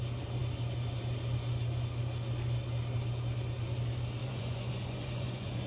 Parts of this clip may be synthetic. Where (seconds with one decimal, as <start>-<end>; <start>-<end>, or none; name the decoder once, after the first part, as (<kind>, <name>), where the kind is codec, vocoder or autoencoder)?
4.2-5.7 (vocoder, Vocos)